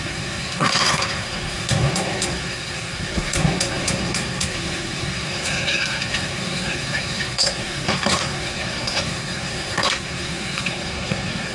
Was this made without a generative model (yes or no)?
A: no